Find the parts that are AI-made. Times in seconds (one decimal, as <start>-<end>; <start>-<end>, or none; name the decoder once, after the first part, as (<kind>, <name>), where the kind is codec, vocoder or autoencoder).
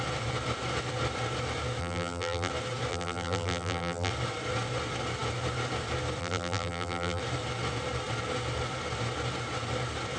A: 1.8-2.5 (vocoder, BigVGAN v2); 2.9-4.1; 6.2-7.2